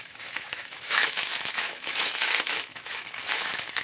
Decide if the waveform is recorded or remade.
remade